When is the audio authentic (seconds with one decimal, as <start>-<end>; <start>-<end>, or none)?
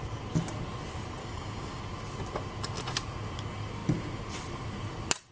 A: 0.0-1.2; 1.8-5.3